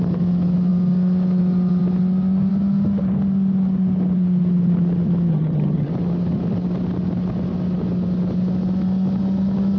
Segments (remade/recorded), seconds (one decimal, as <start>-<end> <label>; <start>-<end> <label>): 0.0-5.3 recorded; 5.3-5.9 remade; 5.9-9.8 recorded